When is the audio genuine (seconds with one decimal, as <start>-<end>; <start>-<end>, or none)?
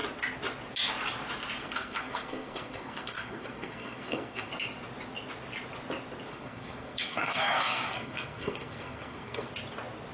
0.0-1.6; 4.5-6.3; 9.5-10.1